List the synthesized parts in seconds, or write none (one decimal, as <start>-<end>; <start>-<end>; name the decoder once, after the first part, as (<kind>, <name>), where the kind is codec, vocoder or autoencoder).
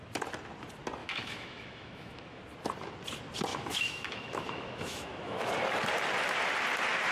1.0-2.4 (autoencoder, DAC-VAE); 3.5-5.5